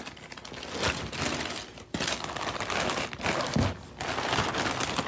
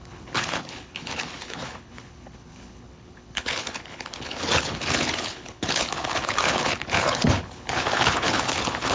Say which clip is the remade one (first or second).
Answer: second